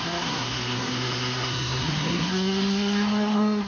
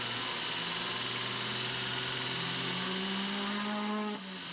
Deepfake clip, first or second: first